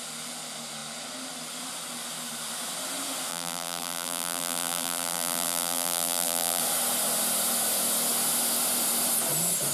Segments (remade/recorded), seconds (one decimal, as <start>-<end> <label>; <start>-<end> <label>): 0.0-3.3 recorded; 3.3-6.6 remade; 6.6-9.7 recorded